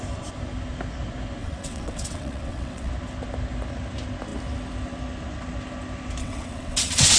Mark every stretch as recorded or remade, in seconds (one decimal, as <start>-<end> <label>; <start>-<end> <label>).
0.0-1.4 recorded; 1.4-2.9 remade; 2.9-6.2 recorded; 6.2-7.2 remade